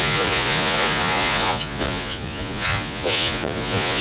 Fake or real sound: fake